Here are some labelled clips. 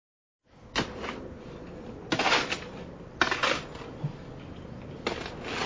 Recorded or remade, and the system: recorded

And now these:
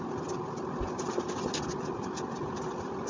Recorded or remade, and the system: recorded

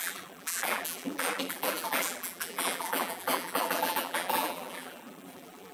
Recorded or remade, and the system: remade, vocoder, BigVGAN v2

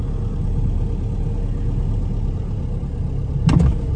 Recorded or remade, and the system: recorded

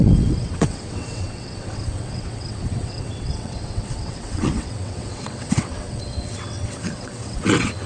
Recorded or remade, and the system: remade, vocoder, WaveNeXt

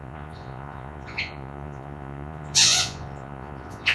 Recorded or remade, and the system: remade, vocoder, Vocos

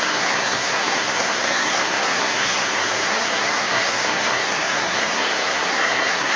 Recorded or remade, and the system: remade, codec, SNAC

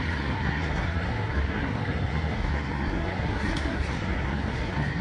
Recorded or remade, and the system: remade, codec, SNAC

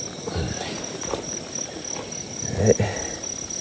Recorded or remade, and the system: recorded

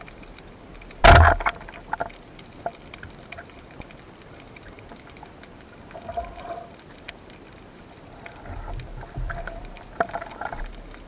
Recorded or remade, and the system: recorded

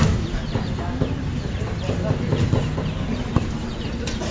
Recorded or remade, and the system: recorded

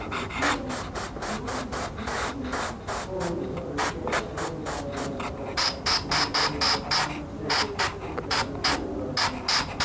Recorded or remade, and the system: recorded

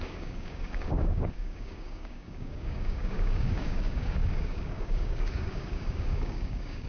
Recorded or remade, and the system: remade, codec, DAC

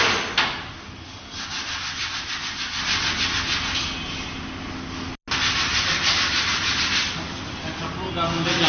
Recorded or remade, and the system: recorded